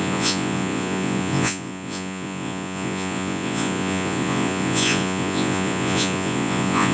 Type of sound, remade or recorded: remade